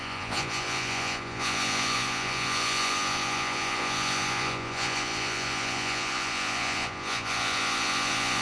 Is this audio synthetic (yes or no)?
yes